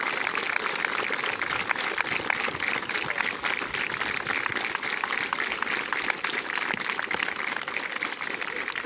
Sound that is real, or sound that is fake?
real